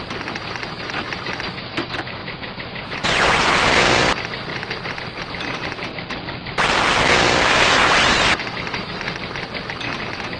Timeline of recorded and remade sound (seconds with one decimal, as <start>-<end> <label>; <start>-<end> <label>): 0.0-2.2 recorded; 2.2-3.5 remade; 3.5-10.4 recorded